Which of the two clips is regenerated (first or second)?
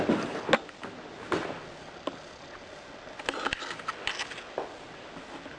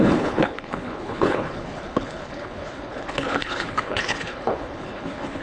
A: second